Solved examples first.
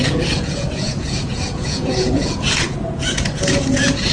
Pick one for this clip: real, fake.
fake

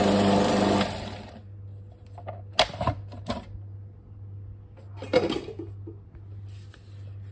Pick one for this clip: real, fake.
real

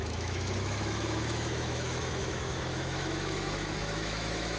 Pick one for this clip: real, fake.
fake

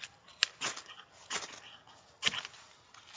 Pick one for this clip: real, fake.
real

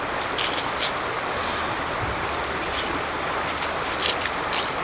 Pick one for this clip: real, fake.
real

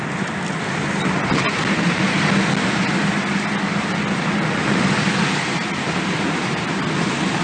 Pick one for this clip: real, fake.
real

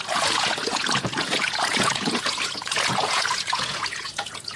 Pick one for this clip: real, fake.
fake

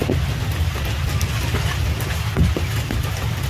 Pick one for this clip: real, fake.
real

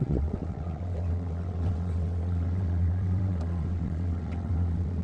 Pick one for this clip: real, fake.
fake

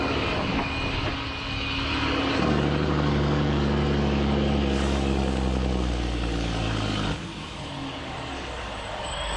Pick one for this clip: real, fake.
fake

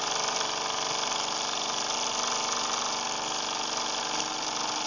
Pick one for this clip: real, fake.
real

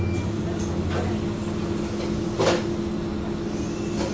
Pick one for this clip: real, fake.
real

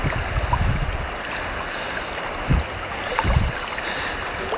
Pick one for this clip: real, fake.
real